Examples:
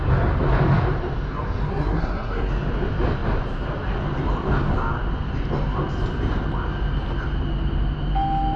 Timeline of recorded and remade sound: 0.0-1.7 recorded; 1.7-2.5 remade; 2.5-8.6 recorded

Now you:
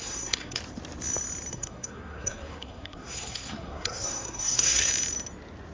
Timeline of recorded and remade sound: 0.0-0.6 remade; 0.6-1.5 recorded; 1.5-4.9 remade; 4.9-5.7 recorded